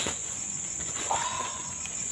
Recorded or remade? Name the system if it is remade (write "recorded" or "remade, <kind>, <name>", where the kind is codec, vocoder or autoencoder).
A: remade, vocoder, Vocos